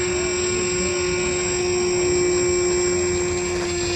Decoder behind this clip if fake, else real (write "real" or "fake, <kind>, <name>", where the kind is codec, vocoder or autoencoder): real